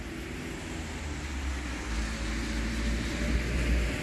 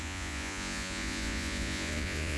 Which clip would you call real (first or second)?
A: first